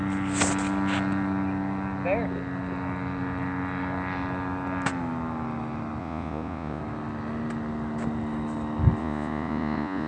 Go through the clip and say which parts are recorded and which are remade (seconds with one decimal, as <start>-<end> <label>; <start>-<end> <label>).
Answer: 0.0-6.0 recorded; 6.0-6.8 remade; 6.8-9.0 recorded; 9.0-10.1 remade